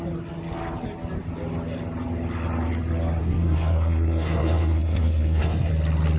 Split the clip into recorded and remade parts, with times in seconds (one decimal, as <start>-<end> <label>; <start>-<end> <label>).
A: 0.0-3.2 recorded; 3.2-5.7 remade; 5.7-6.2 recorded